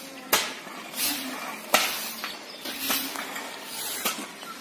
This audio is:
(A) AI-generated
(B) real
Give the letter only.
B